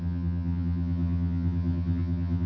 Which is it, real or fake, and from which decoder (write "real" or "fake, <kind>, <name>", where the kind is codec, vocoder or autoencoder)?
fake, vocoder, HiFi-GAN